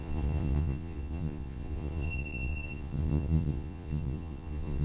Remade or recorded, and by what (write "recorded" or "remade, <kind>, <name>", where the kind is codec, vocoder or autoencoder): remade, vocoder, Vocos